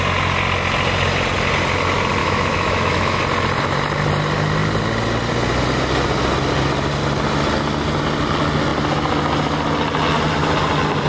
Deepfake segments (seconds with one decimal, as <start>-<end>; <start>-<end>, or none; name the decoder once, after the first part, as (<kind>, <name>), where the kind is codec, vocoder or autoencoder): 2.2-3.2 (autoencoder, DAC-VAE)